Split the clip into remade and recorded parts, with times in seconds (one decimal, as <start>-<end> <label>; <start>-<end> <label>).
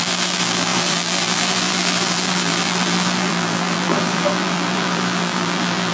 0.0-5.9 remade